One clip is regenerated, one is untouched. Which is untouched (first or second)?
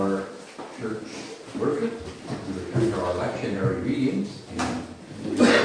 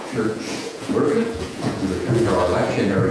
first